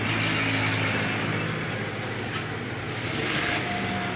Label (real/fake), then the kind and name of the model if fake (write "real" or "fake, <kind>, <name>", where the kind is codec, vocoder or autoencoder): real